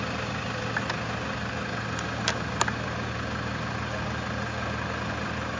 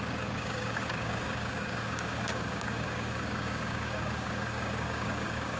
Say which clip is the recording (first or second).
first